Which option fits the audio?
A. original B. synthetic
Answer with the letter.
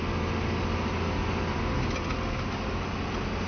A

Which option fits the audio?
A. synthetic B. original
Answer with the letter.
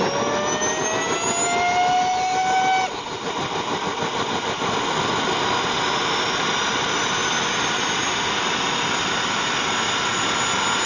B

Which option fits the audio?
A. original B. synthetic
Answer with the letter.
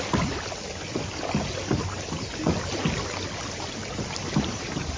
A